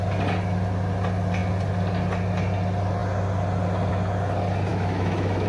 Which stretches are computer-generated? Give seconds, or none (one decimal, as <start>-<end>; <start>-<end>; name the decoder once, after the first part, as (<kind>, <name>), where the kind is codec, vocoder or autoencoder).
4.7-5.5 (autoencoder, DAC-VAE)